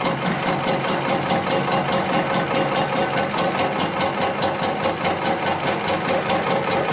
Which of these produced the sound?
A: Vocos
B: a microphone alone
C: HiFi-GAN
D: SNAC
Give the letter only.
B